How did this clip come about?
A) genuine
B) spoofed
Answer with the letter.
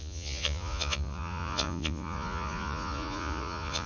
B